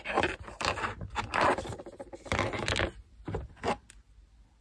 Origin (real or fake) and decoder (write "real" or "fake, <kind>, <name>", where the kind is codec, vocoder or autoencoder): real